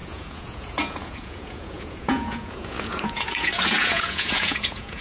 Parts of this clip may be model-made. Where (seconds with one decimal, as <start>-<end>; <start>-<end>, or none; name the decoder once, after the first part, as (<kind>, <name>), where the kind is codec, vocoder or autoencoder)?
0.0-5.0 (vocoder, Vocos)